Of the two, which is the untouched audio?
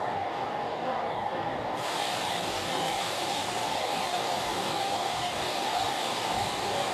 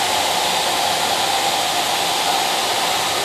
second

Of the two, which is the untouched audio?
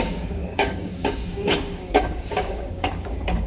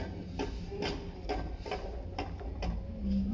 second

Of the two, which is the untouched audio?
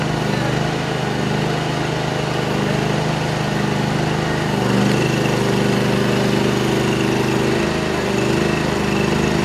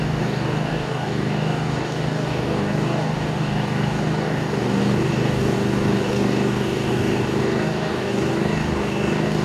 first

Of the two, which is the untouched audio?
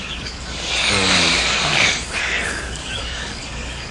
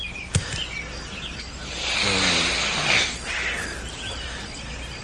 second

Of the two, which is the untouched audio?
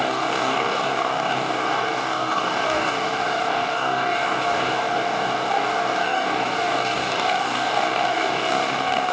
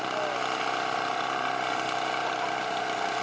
second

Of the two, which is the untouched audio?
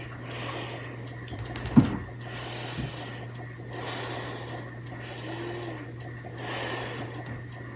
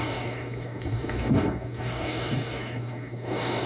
first